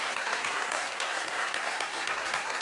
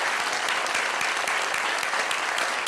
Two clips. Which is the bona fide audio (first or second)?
second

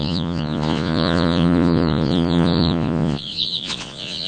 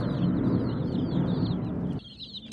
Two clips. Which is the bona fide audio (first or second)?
second